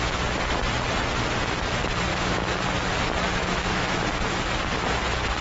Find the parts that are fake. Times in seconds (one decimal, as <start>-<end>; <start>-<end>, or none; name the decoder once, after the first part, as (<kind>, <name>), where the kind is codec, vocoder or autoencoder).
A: 2.1-2.6 (autoencoder, DAC-VAE); 3.4-4.0

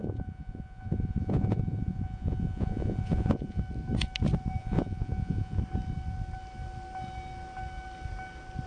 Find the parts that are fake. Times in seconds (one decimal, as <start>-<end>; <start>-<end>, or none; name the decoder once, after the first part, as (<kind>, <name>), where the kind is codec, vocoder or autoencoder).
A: 0.0-3.6 (vocoder, Vocos); 4.6-5.6

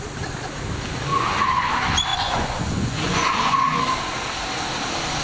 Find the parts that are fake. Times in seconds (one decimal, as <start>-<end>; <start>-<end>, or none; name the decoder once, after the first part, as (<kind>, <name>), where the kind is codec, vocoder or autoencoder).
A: 1.1-1.7 (vocoder, Vocos); 2.1-3.8

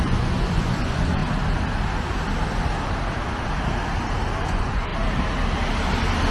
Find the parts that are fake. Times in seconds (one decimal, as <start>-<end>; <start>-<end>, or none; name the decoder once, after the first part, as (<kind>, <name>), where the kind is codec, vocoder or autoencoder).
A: 0.0-1.2 (vocoder, Vocos); 4.5-4.9

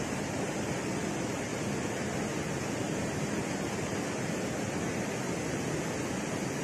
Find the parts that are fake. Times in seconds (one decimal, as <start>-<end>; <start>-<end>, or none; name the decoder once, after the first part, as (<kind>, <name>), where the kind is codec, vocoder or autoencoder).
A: none

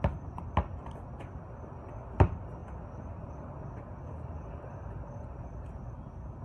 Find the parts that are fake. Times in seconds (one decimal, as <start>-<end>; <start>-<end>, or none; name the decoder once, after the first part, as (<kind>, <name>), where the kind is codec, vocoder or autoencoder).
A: none

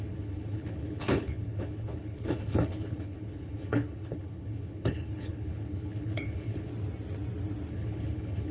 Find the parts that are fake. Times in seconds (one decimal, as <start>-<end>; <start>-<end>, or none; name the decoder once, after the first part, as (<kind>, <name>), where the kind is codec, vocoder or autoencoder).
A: 0.0-6.7 (codec, HILCodec); 7.7-8.5